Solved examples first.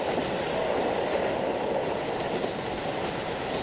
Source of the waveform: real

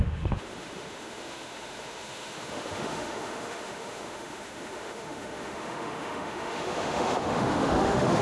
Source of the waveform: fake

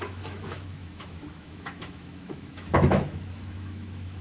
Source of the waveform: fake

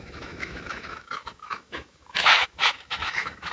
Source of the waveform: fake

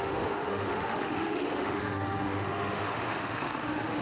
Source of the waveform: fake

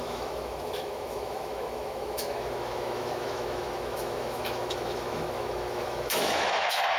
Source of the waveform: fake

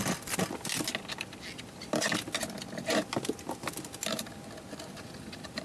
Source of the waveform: real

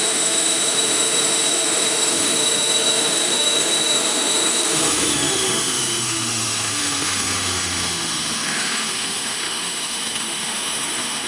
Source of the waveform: fake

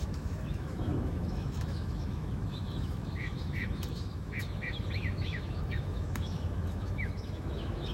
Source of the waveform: fake